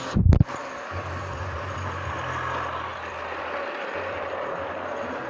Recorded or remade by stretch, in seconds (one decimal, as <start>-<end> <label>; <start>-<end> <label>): 0.0-0.6 recorded; 0.6-1.4 remade; 1.4-2.9 recorded; 2.9-3.9 remade; 3.9-5.3 recorded